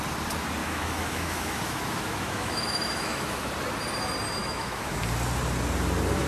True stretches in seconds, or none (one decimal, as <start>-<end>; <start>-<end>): 0.0-0.6; 3.5-4.4; 5.0-6.3